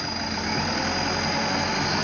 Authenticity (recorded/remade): recorded